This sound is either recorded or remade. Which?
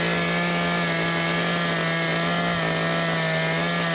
recorded